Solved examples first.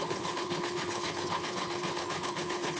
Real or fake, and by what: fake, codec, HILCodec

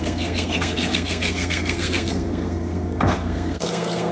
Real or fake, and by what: fake, codec, SNAC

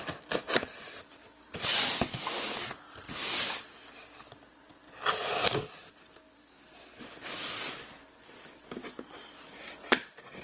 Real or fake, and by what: real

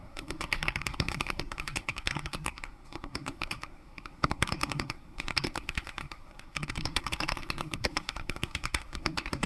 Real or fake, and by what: fake, codec, SNAC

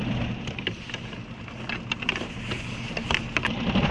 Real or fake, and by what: real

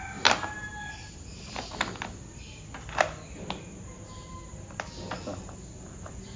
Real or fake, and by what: real